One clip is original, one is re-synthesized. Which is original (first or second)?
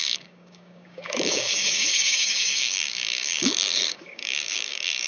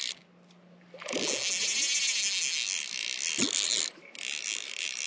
second